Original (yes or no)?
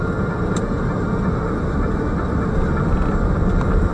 yes